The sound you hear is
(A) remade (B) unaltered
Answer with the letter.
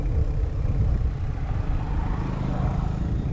B